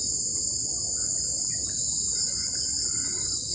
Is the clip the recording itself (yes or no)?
yes